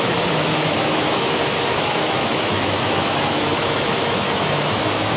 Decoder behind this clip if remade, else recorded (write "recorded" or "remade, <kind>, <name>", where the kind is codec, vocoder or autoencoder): remade, autoencoder, DAC-VAE